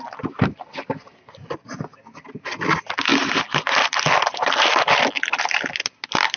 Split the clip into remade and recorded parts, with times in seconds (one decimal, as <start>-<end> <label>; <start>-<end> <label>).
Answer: 0.0-6.4 recorded